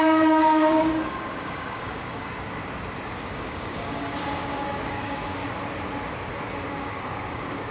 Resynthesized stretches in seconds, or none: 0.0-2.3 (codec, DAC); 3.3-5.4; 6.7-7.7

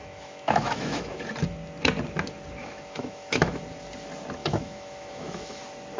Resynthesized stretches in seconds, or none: 0.0-1.2 (autoencoder, DAC-VAE); 2.6-3.6; 4.4-5.6

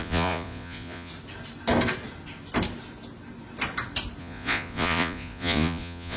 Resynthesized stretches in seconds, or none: 0.0-1.1 (vocoder, Vocos); 4.2-6.2

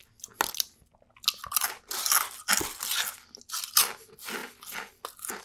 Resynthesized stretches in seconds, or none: none